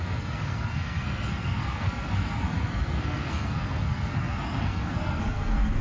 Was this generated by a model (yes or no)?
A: yes